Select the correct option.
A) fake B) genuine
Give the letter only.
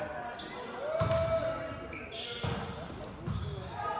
B